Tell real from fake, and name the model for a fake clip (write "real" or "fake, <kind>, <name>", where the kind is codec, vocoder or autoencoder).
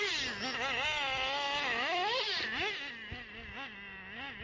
real